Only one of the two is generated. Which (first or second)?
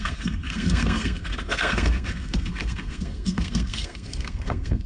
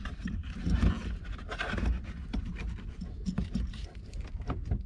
first